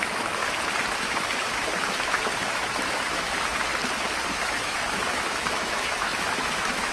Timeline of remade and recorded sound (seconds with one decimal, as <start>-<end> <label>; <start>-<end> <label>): 0.0-0.4 remade; 0.4-1.0 recorded; 1.0-3.7 remade; 3.7-4.3 recorded; 4.3-6.9 remade